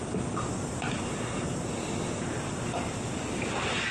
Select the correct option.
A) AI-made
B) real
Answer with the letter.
B